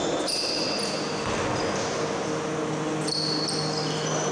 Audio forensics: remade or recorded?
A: recorded